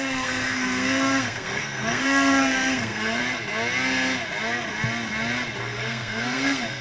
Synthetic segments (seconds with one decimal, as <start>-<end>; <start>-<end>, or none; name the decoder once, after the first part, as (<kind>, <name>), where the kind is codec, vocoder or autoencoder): 0.0-3.2 (codec, SNAC); 5.6-6.8